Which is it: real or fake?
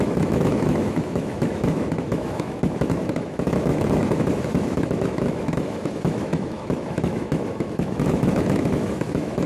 fake